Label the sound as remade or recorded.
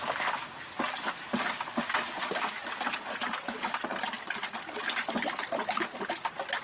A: recorded